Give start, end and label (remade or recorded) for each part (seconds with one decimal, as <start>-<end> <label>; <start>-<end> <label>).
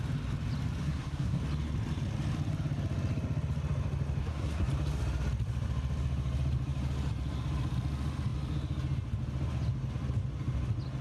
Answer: 0.0-0.8 recorded; 0.8-1.4 remade; 1.4-4.2 recorded; 4.2-4.7 remade; 4.7-11.0 recorded